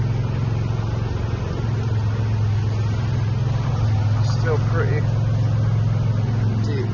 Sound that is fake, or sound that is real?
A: real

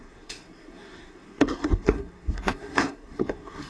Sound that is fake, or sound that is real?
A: fake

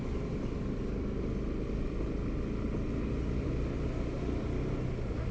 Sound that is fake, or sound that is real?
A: real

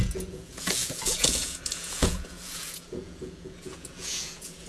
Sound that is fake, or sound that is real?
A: fake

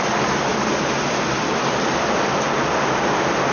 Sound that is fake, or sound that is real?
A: real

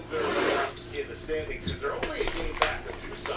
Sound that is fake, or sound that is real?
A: real